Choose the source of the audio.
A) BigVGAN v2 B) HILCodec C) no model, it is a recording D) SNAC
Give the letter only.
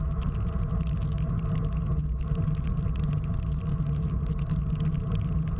C